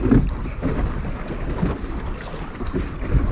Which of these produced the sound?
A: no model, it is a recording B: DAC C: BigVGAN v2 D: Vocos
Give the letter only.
A